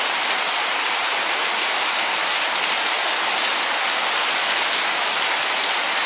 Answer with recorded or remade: recorded